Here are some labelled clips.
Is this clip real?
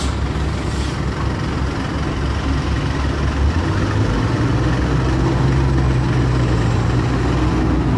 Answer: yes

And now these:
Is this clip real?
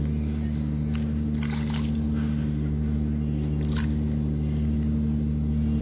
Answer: yes